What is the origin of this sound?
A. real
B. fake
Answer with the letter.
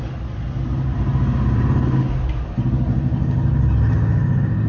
A